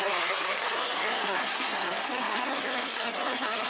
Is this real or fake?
fake